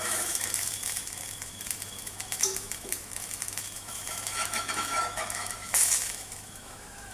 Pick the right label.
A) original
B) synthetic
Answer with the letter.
B